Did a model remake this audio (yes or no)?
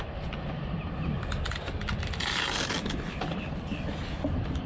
no